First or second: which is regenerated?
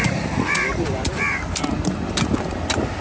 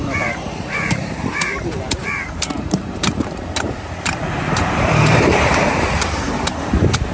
second